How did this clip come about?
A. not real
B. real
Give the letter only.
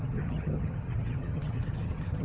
A